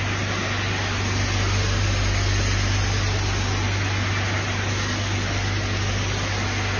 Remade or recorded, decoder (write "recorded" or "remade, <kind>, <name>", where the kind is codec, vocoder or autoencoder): recorded